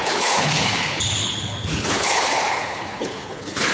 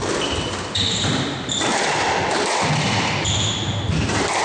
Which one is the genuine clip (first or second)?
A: second